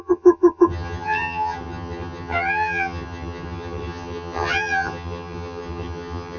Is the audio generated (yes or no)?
yes